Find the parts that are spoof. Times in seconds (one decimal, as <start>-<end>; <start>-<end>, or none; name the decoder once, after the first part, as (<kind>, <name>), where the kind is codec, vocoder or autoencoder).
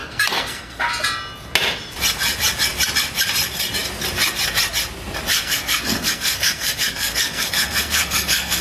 0.0-0.9 (codec, SNAC); 5.3-8.6